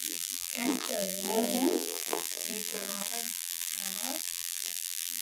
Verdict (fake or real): fake